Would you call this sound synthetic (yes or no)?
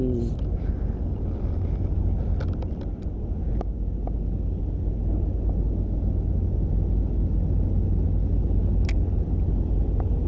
no